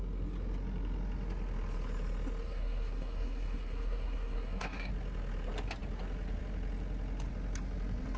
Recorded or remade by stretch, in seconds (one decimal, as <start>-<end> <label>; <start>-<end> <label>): 0.0-2.4 recorded; 2.4-4.9 remade; 4.9-8.2 recorded